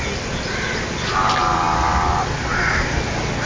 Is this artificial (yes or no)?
no